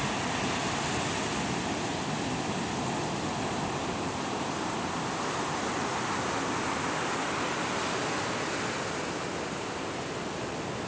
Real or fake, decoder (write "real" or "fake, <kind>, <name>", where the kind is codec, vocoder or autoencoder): real